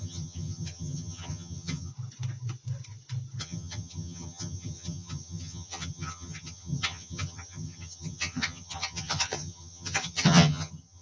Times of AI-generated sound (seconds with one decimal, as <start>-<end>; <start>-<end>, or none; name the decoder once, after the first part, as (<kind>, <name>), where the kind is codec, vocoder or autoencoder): 0.0-1.9 (vocoder, HiFi-GAN); 3.4-11.0